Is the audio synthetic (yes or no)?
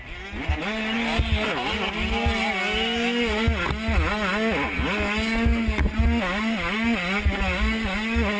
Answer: no